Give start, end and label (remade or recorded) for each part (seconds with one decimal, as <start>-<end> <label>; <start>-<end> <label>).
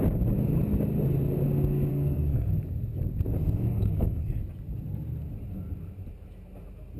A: 0.0-1.9 recorded; 1.9-2.5 remade; 2.5-3.4 recorded; 3.4-4.4 remade; 4.4-7.0 recorded